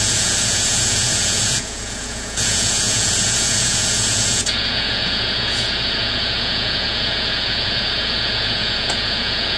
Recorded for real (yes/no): no